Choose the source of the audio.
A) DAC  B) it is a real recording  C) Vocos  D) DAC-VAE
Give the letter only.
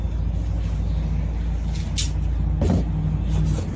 B